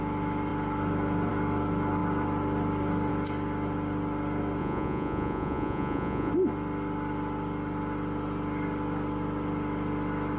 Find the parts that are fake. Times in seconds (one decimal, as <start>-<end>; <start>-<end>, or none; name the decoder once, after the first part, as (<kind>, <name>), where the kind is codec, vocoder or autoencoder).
4.6-6.3 (vocoder, Vocos)